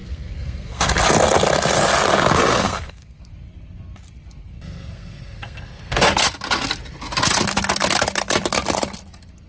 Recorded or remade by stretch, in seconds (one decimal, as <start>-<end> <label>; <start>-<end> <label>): 0.0-0.9 remade; 0.9-2.5 recorded; 2.5-3.3 remade; 3.3-4.4 recorded; 4.4-6.0 remade; 6.0-9.5 recorded